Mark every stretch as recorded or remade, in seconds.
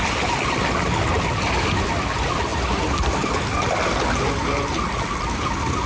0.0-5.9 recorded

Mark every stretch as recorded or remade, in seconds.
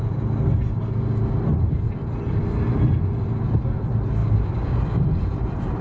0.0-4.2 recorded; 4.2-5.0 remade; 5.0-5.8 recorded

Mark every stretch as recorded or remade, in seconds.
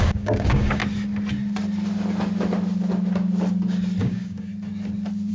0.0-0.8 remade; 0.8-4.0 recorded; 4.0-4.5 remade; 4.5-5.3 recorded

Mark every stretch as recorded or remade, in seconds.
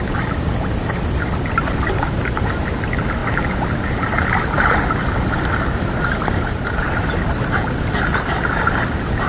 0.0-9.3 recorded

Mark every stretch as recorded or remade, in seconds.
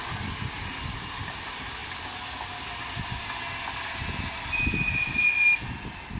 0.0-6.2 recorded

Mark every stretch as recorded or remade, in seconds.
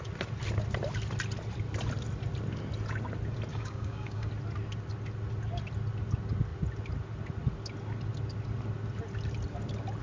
0.0-3.5 recorded; 3.5-4.3 remade; 4.3-10.0 recorded